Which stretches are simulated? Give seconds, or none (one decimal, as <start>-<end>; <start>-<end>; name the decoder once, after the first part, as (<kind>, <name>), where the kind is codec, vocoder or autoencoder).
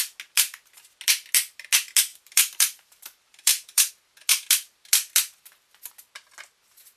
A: 2.1-3.9 (vocoder, BigVGAN v2)